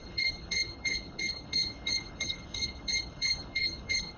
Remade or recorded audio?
remade